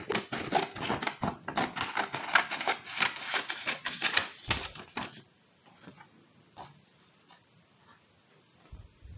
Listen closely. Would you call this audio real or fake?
real